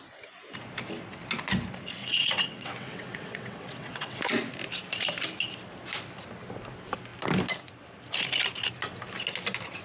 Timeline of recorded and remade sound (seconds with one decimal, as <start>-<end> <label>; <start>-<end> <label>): 0.0-2.0 recorded; 2.0-4.2 remade; 4.2-9.8 recorded

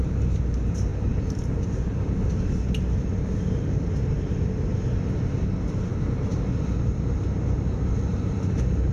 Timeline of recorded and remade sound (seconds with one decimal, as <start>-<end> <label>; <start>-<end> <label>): 0.0-0.9 remade; 0.9-5.7 recorded; 5.7-6.3 remade; 6.3-8.1 recorded; 8.1-8.9 remade

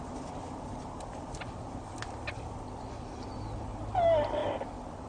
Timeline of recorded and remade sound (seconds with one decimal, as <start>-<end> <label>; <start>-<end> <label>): 0.0-5.1 recorded